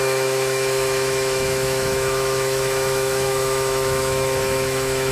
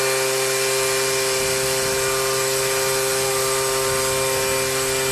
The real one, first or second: second